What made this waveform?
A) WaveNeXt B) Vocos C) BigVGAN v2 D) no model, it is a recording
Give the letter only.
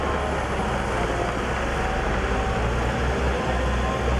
D